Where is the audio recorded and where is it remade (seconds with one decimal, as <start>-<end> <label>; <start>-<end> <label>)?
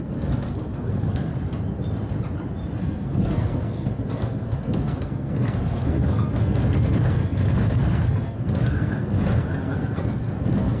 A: 0.0-1.3 remade; 1.3-2.8 recorded; 2.8-10.8 remade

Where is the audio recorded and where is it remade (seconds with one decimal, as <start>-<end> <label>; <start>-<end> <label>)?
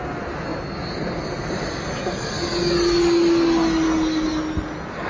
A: 0.0-5.1 recorded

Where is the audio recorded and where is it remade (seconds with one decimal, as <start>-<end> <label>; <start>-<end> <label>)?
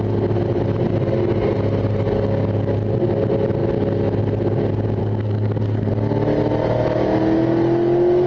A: 0.0-5.0 recorded; 5.0-5.9 remade; 5.9-8.3 recorded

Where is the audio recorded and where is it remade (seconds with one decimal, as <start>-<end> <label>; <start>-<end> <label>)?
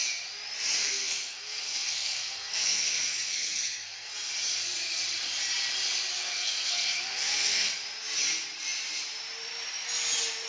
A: 0.0-0.8 recorded; 0.8-4.1 remade; 4.1-6.2 recorded; 6.2-7.7 remade; 7.7-10.5 recorded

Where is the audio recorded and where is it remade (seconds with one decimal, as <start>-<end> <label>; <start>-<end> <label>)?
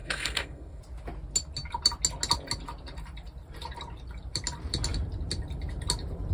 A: 0.0-0.8 remade; 0.8-6.3 recorded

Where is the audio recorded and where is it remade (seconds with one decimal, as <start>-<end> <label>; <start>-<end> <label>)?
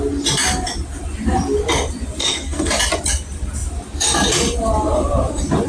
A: 0.0-2.2 recorded; 2.2-2.7 remade; 2.7-5.7 recorded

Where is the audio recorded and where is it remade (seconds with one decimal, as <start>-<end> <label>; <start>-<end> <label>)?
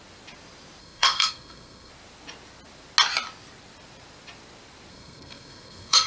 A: 0.0-0.8 recorded; 0.8-1.9 remade; 1.9-4.9 recorded; 4.9-6.1 remade